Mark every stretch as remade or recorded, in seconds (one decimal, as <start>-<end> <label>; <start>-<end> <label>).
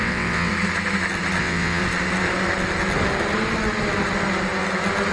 0.0-0.5 remade; 0.5-1.4 recorded; 1.4-1.8 remade; 1.8-5.1 recorded